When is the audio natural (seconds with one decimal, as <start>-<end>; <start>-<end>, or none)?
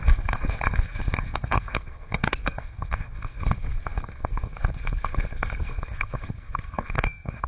none